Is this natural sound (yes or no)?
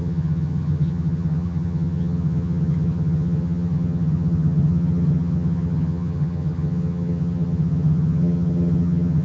no